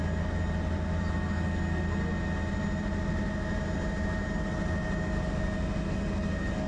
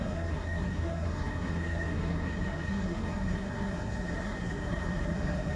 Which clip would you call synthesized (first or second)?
second